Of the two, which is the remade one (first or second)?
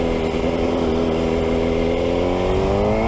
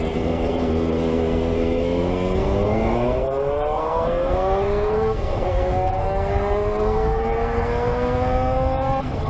second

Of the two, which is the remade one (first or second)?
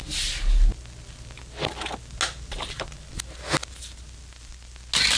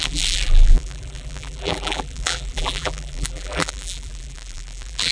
second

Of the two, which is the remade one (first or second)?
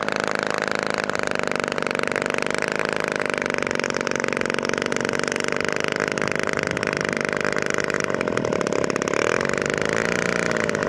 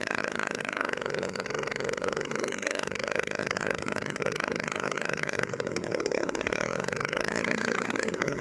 second